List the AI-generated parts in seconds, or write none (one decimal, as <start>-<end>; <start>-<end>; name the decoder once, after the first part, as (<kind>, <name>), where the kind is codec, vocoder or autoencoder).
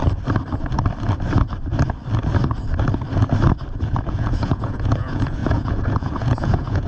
4.1-6.9 (vocoder, Vocos)